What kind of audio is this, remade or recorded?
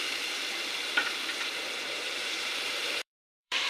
remade